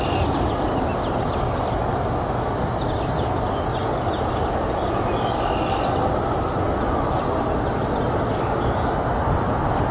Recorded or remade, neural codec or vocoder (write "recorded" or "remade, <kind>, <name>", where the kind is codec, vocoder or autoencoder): recorded